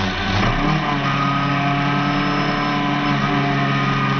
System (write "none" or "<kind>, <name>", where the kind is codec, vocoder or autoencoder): none